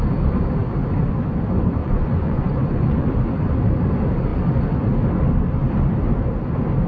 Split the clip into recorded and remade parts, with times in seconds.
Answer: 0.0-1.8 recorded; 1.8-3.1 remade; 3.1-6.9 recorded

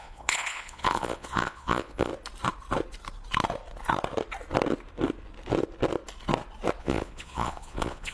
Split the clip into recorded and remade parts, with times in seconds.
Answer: 0.0-2.1 remade; 2.1-6.8 recorded; 6.8-8.1 remade